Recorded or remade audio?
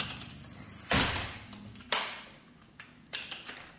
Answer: recorded